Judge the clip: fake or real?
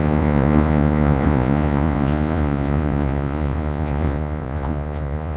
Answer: fake